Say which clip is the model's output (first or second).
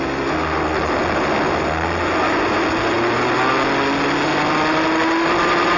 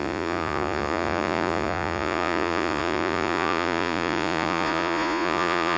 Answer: second